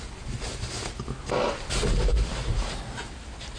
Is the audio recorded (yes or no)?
yes